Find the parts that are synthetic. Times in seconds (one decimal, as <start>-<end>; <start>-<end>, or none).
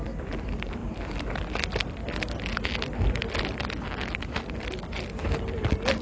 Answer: none